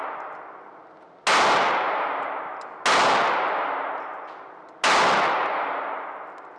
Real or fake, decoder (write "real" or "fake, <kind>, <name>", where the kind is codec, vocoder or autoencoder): real